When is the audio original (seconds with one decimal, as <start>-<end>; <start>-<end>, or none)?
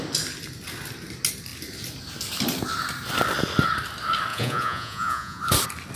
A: 0.0-4.3; 5.4-6.0